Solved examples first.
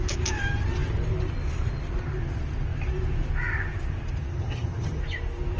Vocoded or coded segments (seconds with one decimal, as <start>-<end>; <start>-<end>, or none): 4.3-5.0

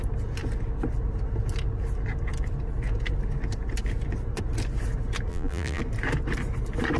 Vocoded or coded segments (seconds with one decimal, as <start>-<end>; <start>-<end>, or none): 5.3-5.8

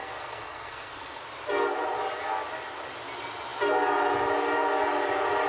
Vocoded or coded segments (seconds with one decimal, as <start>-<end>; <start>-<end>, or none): 0.0-1.2